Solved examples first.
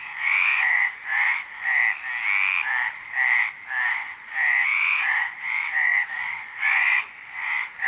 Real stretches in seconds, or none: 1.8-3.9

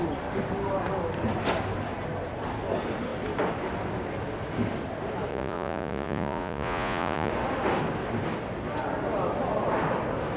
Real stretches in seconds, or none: 0.0-5.3; 7.3-10.4

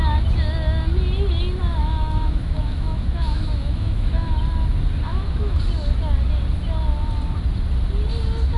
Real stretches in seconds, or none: 0.0-1.8; 4.4-5.1; 5.6-8.6